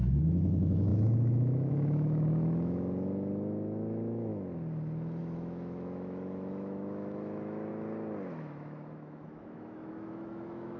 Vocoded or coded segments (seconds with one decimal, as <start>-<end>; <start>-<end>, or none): 0.0-4.3; 5.2-7.7; 8.3-10.8